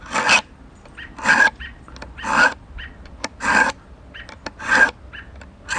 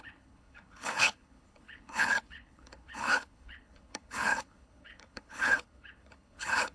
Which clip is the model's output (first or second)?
second